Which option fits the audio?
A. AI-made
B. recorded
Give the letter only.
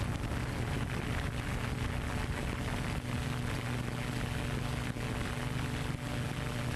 B